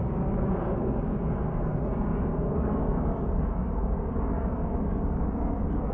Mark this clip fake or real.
fake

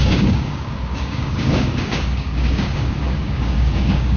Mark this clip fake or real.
fake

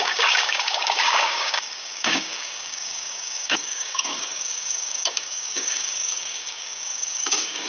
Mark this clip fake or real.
fake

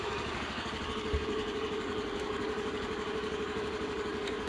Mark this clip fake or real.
fake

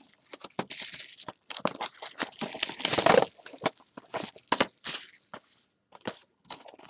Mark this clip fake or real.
real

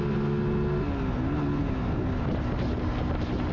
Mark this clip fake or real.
real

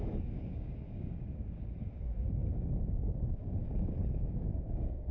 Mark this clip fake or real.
fake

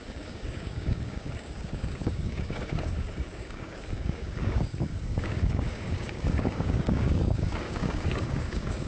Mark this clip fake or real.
fake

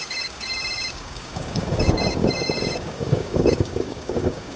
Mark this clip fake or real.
fake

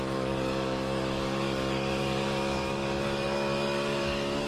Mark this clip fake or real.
fake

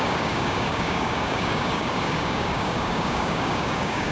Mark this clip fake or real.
fake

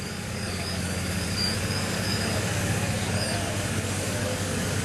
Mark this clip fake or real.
fake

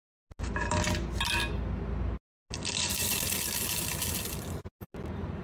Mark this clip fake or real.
real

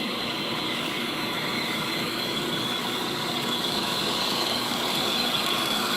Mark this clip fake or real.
fake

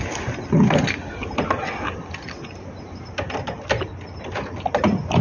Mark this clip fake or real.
real